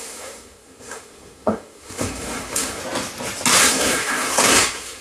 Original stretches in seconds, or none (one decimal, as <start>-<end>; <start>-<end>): 2.8-3.6